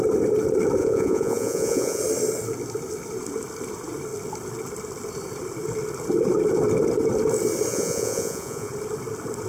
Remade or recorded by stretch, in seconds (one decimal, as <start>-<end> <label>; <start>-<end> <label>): 0.0-0.8 recorded; 0.8-2.0 remade; 2.0-7.7 recorded; 7.7-8.7 remade; 8.7-9.5 recorded